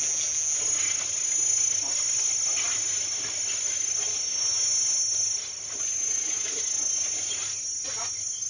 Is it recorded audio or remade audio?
recorded